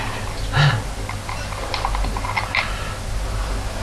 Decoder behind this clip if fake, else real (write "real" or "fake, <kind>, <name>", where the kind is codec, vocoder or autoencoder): real